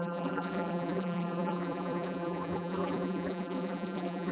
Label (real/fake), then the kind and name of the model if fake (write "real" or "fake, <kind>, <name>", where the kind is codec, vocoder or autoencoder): fake, vocoder, BigVGAN v2